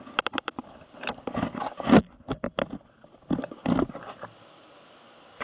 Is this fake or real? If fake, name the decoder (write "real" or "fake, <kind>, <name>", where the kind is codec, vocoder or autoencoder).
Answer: real